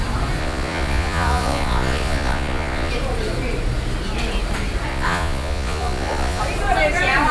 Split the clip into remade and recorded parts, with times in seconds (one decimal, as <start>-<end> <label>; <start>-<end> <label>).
0.0-0.4 recorded; 0.4-2.9 remade; 2.9-4.9 recorded; 4.9-6.4 remade; 6.4-7.3 recorded